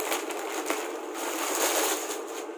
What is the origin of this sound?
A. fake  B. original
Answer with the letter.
B